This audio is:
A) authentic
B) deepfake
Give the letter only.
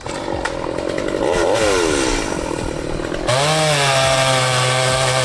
A